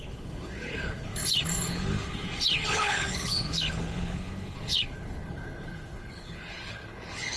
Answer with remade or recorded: remade